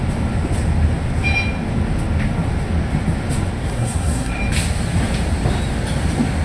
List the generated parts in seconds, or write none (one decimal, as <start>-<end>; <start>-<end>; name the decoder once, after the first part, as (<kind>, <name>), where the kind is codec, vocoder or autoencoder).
3.6-4.4 (codec, SNAC)